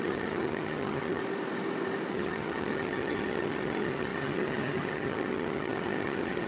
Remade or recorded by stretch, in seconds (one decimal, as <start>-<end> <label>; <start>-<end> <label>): 0.0-1.2 remade; 1.2-2.1 recorded; 2.1-6.5 remade